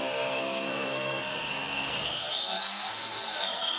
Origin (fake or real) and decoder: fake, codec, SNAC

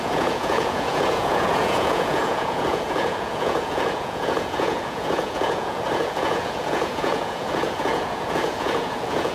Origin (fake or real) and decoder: fake, vocoder, Vocos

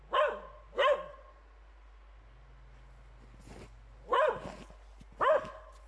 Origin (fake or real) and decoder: real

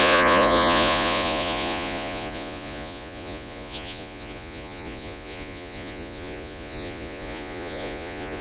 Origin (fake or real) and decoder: fake, vocoder, Vocos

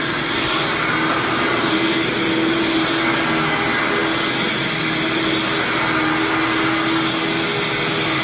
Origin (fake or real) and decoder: real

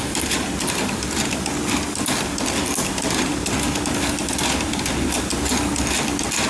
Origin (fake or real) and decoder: real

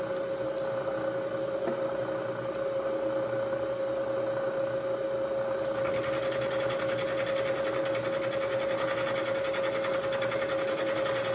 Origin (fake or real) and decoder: real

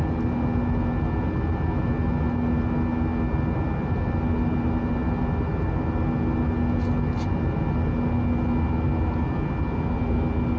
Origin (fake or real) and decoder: real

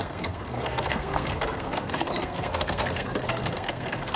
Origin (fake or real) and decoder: fake, codec, SNAC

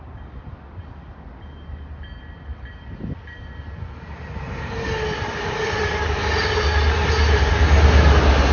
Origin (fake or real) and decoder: real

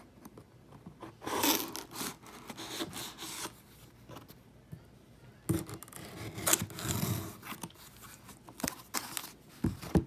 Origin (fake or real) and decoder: real